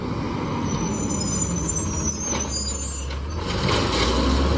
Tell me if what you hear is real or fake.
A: real